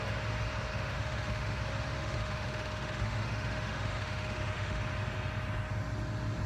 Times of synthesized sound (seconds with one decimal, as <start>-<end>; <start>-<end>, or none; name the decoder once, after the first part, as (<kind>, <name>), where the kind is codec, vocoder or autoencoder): 0.7-1.6 (autoencoder, DAC-VAE); 2.0-4.8